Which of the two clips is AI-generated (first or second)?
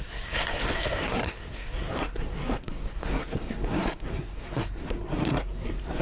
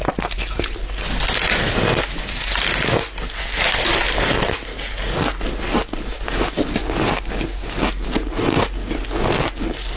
first